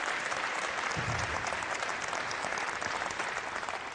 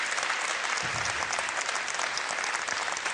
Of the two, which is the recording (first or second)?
second